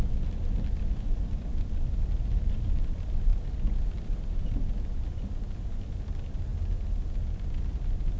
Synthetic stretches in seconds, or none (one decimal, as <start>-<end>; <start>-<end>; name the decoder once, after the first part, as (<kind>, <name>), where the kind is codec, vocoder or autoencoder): 0.0-3.3 (vocoder, BigVGAN v2); 5.2-6.5; 7.1-8.2